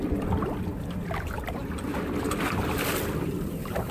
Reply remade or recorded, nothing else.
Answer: recorded